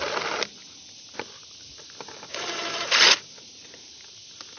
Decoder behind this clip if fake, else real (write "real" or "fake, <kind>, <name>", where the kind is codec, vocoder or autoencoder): real